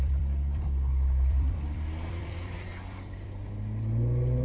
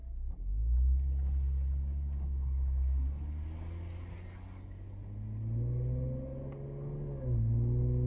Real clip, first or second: second